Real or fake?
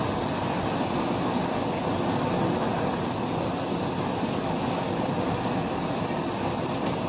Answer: real